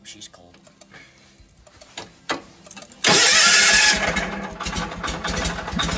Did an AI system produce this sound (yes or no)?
no